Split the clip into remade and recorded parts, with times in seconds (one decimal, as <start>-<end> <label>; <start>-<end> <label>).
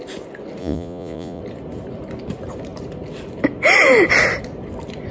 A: 0.0-0.6 recorded; 0.6-1.4 remade; 1.4-5.1 recorded